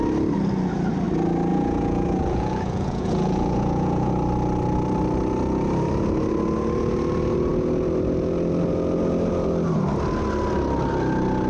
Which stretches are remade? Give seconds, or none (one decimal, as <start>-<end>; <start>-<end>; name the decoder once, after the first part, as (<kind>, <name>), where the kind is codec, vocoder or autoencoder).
1.5-4.1 (vocoder, Vocos)